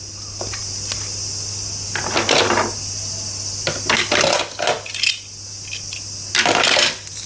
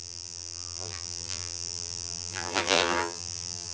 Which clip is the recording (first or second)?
first